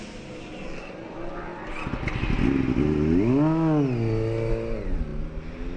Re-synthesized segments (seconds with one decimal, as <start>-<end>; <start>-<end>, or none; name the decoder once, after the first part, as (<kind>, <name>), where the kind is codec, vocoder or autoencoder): none

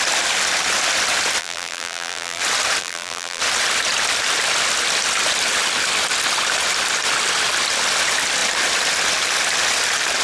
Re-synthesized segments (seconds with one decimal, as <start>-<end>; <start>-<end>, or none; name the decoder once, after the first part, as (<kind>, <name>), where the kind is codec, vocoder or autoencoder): 1.4-2.4 (vocoder, BigVGAN v2); 2.8-3.4

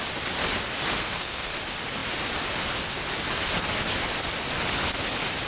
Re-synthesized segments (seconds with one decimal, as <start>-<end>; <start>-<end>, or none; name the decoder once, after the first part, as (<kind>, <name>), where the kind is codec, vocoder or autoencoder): 1.0-1.5 (codec, SNAC)

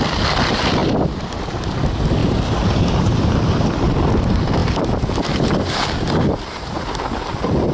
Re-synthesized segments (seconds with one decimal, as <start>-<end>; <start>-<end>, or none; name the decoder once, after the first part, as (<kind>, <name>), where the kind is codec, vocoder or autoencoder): 2.2-3.7 (vocoder, BigVGAN v2)

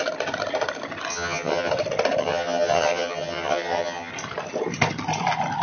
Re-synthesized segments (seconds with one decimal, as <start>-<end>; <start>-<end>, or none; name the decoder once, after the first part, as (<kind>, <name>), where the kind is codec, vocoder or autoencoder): 1.1-1.7 (vocoder, HiFi-GAN); 2.2-4.1